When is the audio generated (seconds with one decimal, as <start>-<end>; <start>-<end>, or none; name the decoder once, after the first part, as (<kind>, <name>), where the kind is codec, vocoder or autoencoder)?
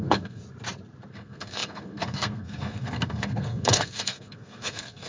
0.0-0.4 (codec, SNAC); 1.1-5.1